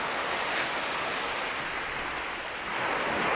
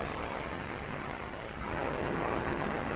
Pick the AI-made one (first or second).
second